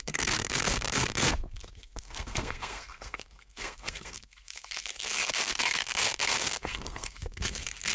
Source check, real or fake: fake